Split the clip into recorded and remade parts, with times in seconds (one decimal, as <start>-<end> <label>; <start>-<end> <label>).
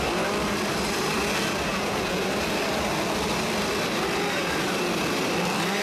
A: 0.0-1.7 recorded; 1.7-2.2 remade; 2.2-5.8 recorded